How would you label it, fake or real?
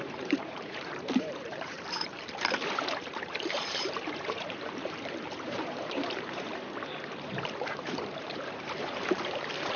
fake